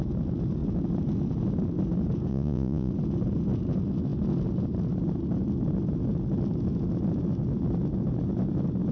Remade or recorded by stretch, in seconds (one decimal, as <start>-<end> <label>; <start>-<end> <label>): 0.0-2.3 recorded; 2.3-2.9 remade; 2.9-8.9 recorded